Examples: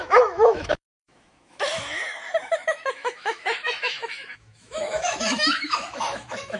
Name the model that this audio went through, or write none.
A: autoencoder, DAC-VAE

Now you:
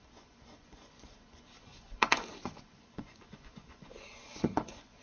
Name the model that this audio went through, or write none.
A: vocoder, Vocos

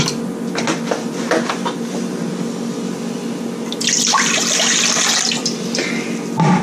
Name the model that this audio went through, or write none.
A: none